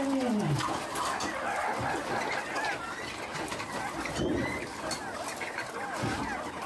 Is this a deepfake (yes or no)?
no